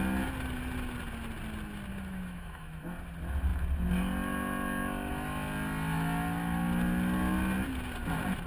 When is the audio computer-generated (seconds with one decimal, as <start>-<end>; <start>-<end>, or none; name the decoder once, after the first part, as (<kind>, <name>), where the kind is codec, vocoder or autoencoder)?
1.9-2.8 (autoencoder, DAC-VAE)